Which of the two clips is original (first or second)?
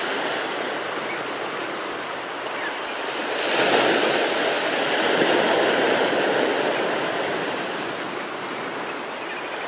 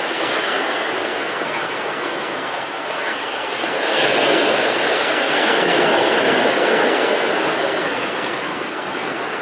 first